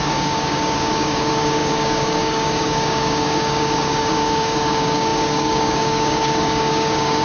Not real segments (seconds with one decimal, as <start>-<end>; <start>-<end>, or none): 0.0-7.2